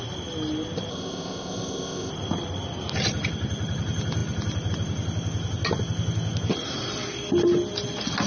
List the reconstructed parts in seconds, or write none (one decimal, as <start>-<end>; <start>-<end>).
0.9-2.1